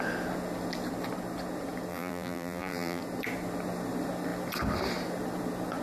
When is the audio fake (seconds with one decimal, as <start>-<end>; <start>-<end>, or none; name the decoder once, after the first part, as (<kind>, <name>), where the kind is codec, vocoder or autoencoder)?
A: 1.9-3.0 (vocoder, BigVGAN v2)